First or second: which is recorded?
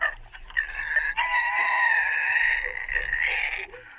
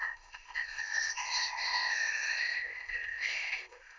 first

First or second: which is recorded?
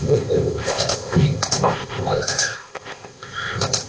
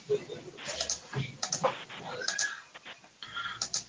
second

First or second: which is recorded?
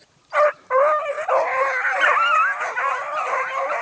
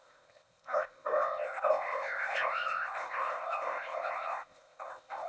first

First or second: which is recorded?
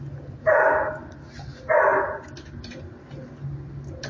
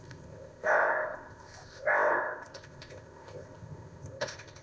first